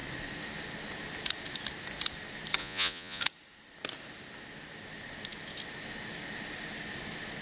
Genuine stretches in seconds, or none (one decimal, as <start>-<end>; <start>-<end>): 0.0-2.6; 3.2-7.4